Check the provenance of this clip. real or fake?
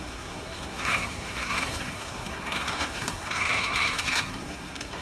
fake